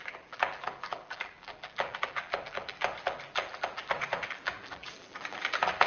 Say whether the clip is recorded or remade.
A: remade